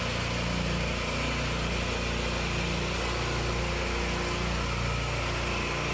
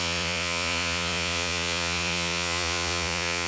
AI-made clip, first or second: second